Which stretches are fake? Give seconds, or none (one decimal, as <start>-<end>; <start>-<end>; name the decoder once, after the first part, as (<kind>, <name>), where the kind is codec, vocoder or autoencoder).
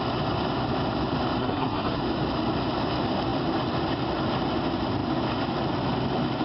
1.4-2.0 (codec, SNAC)